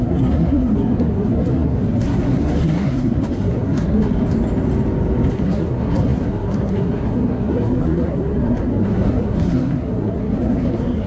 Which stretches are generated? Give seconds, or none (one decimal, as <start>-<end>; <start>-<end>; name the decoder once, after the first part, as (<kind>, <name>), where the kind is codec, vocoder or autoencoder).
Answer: 0.0-4.2 (codec, SNAC); 5.3-11.1